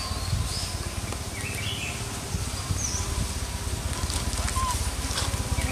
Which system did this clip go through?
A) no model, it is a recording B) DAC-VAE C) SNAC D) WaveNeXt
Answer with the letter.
A